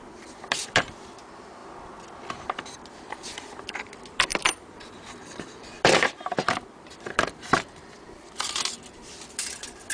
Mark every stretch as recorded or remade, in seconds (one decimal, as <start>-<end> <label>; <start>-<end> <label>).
0.0-1.6 remade; 1.6-2.3 recorded; 2.3-9.9 remade